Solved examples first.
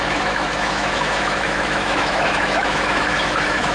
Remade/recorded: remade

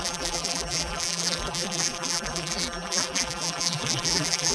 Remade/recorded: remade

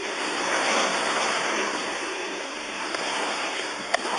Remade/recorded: remade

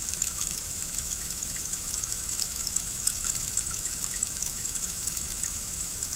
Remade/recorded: remade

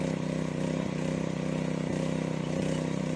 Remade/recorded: recorded